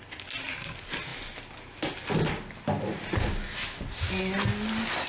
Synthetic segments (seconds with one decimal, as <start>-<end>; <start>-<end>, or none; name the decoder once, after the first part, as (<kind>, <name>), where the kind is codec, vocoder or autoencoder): none